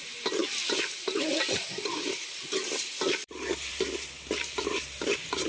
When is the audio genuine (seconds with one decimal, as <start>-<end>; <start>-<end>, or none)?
0.0-5.5

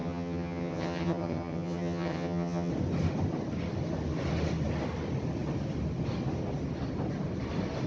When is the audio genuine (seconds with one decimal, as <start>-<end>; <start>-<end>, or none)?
2.7-7.9

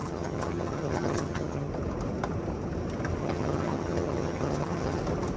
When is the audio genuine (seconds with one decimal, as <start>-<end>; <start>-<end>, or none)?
1.7-3.2; 5.0-5.4

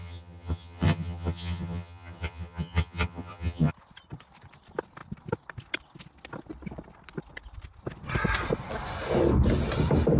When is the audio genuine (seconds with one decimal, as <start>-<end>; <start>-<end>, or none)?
3.7-10.2

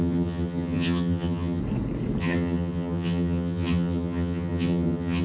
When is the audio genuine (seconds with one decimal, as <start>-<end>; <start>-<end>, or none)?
1.6-2.2